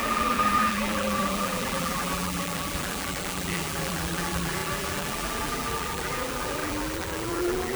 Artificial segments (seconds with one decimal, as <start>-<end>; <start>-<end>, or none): 0.0-7.8